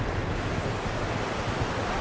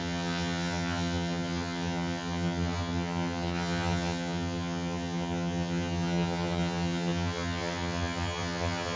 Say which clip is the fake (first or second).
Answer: second